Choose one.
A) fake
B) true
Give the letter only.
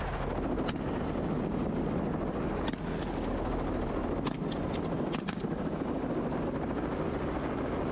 B